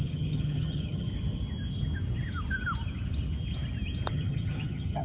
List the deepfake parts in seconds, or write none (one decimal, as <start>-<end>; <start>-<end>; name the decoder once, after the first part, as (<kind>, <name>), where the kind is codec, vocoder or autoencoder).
0.0-1.1 (vocoder, HiFi-GAN); 4.1-5.0